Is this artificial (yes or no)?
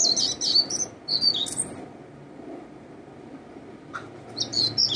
no